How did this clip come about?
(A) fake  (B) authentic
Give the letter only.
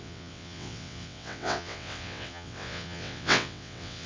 A